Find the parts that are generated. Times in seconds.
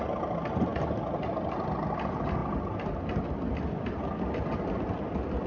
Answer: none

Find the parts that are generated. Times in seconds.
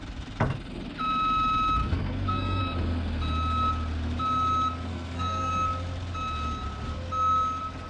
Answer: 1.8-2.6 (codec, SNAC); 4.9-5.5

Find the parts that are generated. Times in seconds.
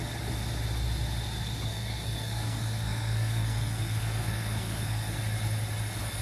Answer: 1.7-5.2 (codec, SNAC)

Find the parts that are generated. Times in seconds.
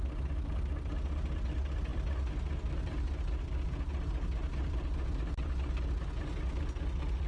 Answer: none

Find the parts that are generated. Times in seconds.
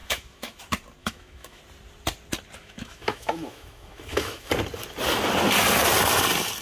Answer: 0.0-0.6 (autoencoder, DAC-VAE); 1.0-1.6; 2.6-4.5